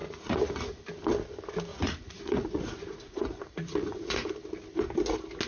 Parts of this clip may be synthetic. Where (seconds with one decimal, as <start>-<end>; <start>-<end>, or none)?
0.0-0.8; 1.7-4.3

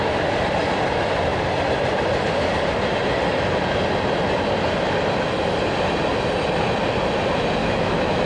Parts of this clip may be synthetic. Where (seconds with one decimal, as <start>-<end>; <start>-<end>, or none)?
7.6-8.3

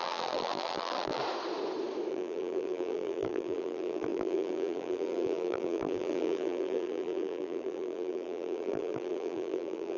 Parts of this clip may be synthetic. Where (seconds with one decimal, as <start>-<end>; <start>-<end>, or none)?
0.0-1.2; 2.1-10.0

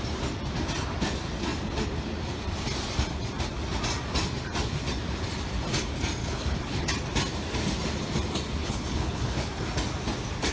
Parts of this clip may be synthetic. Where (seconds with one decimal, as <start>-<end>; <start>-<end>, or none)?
6.2-6.9; 8.6-9.5